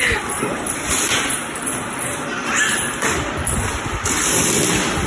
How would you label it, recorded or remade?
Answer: remade